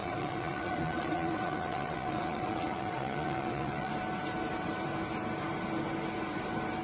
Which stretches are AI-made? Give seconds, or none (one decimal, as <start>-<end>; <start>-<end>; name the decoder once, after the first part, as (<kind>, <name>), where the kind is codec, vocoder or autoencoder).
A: 0.0-3.9 (vocoder, Vocos)